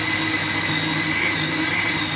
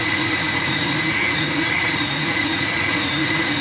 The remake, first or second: second